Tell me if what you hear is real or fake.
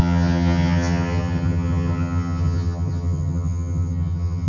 fake